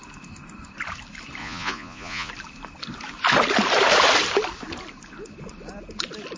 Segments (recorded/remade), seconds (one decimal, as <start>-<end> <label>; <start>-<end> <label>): 0.0-1.4 recorded; 1.4-2.3 remade; 2.3-6.4 recorded